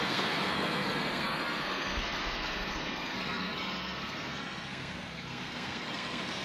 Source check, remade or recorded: remade